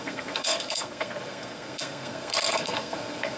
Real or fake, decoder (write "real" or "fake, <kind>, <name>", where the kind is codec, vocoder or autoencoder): fake, codec, SNAC